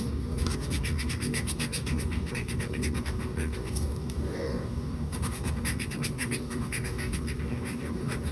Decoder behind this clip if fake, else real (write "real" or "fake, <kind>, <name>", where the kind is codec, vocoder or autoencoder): fake, codec, DAC